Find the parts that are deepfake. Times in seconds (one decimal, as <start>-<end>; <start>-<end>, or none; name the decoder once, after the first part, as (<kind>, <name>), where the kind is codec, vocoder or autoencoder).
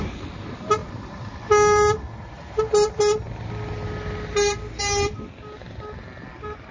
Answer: none